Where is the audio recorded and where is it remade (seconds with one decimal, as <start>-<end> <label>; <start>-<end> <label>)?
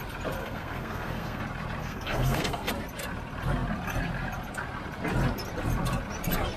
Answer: 0.0-0.4 recorded; 0.4-1.4 remade; 1.4-1.8 recorded; 1.8-2.7 remade; 2.7-6.6 recorded